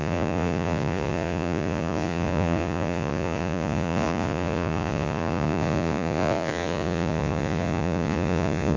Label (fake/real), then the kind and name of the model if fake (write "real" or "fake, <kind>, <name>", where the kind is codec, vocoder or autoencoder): fake, vocoder, Vocos